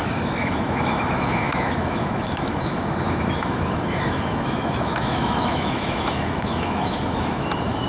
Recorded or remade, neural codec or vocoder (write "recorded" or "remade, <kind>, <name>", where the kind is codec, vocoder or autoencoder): remade, autoencoder, DAC-VAE